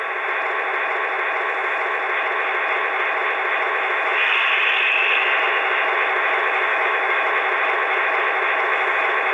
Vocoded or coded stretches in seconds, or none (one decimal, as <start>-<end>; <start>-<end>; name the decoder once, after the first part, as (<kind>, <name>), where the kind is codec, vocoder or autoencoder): 6.7-7.3 (autoencoder, DAC-VAE)